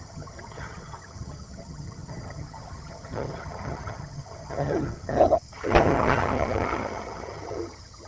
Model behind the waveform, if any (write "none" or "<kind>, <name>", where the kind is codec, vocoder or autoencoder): vocoder, HiFi-GAN